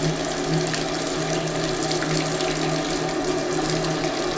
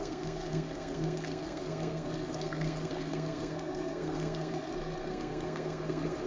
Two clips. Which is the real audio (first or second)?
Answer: first